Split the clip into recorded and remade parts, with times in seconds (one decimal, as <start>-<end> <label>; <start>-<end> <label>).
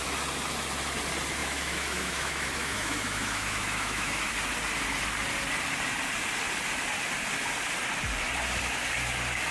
0.0-1.4 recorded; 1.4-4.3 remade; 4.3-9.5 recorded